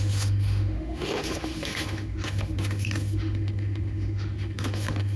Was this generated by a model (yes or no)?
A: yes